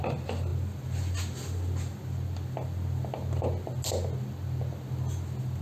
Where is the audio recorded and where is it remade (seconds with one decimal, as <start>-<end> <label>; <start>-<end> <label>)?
0.0-5.6 recorded